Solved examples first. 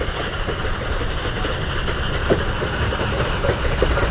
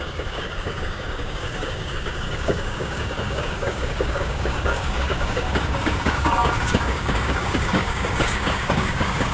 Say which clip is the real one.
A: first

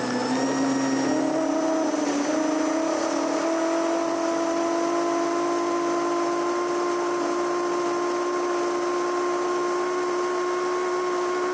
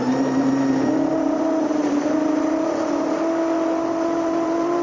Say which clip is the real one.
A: first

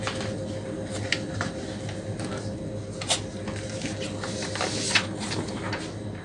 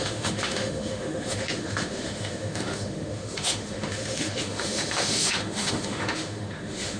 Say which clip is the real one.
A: first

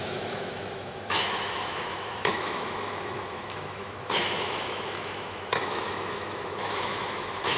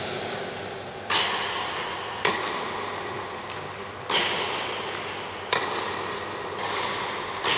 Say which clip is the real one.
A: second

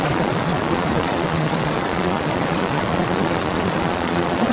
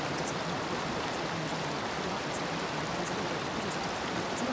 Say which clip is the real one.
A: second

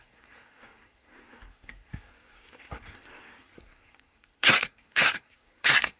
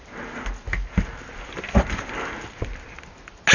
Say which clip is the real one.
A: second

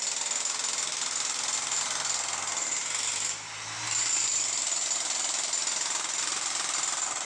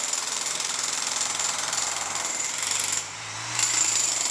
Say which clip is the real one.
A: first